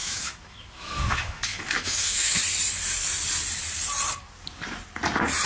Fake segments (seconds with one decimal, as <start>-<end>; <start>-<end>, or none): 0.0-2.4